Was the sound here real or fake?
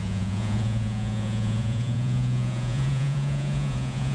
fake